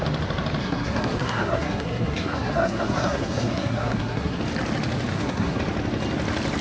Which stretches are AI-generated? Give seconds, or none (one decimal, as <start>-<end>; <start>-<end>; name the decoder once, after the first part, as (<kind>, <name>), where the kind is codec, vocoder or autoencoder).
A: 0.6-4.4 (codec, SNAC); 5.1-5.6